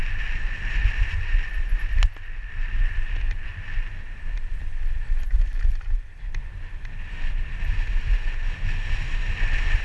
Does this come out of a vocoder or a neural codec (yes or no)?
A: no